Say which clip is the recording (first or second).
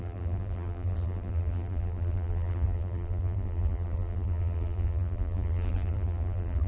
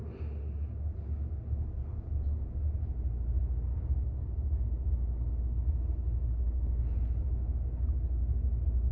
second